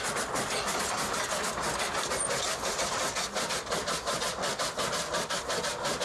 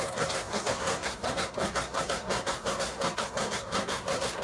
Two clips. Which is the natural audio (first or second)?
first